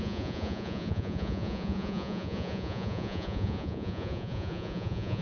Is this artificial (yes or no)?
yes